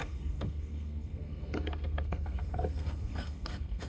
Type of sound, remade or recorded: remade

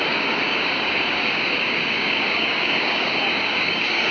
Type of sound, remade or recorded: remade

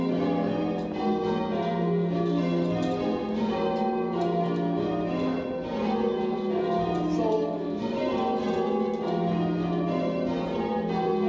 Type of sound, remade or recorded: recorded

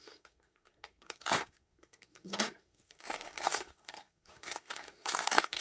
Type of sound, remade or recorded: remade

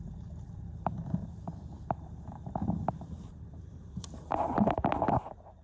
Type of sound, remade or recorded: remade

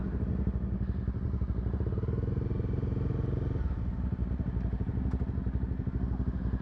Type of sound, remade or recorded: recorded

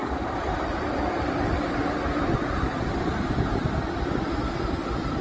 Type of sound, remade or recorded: recorded